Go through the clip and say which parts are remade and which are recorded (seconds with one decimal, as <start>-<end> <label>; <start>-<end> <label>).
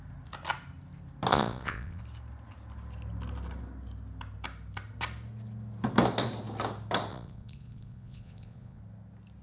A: 0.0-1.3 recorded; 1.3-2.0 remade; 2.0-7.1 recorded; 7.1-8.8 remade; 8.8-9.4 recorded